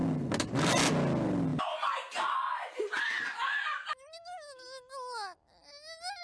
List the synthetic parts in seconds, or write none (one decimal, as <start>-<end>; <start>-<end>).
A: none